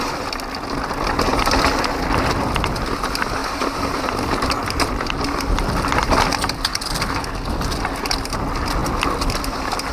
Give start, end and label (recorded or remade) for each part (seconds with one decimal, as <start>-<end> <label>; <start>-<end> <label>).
0.0-3.4 recorded; 3.4-5.1 remade; 5.1-9.9 recorded